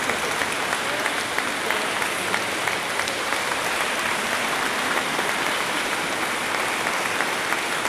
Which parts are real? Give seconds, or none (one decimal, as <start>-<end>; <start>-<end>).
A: 0.0-3.3; 6.4-7.9